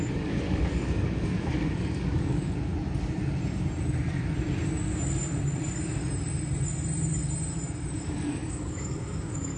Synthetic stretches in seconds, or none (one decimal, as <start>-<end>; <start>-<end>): 0.0-2.7; 7.9-9.6

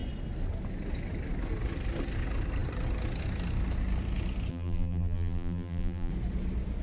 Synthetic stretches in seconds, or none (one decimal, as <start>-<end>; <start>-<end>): 4.5-6.1